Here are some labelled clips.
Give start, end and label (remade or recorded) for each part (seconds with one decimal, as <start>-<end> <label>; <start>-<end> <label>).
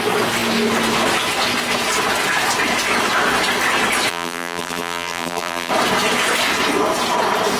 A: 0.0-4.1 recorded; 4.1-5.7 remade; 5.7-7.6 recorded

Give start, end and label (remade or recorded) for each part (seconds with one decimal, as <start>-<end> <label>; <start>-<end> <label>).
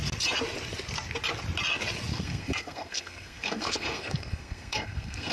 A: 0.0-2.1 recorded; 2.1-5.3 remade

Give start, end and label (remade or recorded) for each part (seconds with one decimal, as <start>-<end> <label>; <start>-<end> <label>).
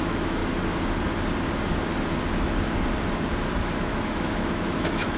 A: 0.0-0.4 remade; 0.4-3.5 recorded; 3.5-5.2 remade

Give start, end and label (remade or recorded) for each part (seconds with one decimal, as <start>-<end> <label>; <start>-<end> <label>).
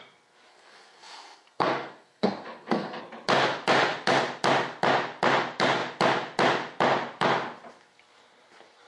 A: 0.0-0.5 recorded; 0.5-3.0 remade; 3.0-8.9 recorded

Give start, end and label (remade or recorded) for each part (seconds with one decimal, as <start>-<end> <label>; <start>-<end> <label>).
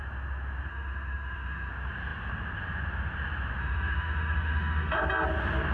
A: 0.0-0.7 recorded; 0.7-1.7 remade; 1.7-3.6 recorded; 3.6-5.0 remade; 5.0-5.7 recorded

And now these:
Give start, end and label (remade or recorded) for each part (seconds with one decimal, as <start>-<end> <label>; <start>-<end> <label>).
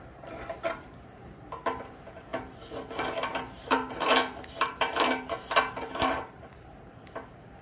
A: 0.0-7.6 remade